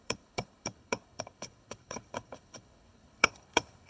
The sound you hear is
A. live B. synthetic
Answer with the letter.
B